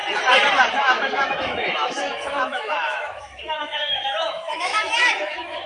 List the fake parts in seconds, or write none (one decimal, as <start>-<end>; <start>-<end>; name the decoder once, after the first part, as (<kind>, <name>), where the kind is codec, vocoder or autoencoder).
0.7-5.7 (autoencoder, DAC-VAE)